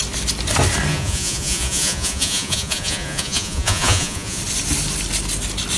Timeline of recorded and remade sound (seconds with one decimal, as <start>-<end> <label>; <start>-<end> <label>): 0.0-0.9 recorded; 0.9-4.4 remade; 4.4-5.8 recorded